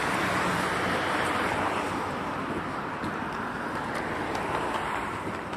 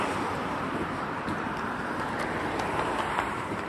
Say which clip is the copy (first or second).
second